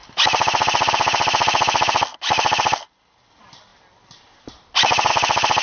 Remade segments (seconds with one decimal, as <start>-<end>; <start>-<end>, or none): none